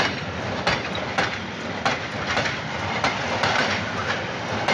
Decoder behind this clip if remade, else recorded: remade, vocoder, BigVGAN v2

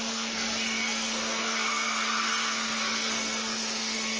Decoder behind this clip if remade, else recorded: remade, codec, SNAC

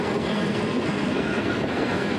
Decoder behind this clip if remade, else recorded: remade, codec, SNAC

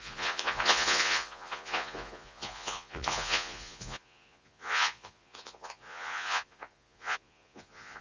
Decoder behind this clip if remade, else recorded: remade, vocoder, Vocos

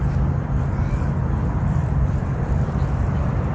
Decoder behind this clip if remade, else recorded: remade, vocoder, BigVGAN v2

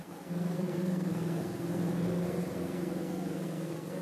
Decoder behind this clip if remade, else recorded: remade, codec, SNAC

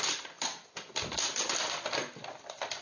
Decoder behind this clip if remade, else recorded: recorded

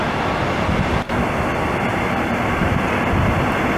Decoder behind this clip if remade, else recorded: recorded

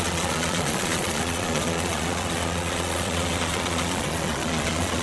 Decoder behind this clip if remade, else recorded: remade, vocoder, Vocos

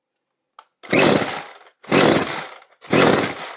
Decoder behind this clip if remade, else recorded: recorded